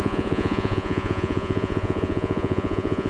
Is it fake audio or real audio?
fake